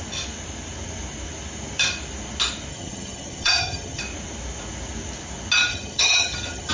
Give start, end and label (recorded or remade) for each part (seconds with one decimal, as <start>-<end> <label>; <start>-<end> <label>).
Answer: 0.0-2.7 recorded; 2.7-4.0 remade; 4.0-5.7 recorded; 5.7-6.7 remade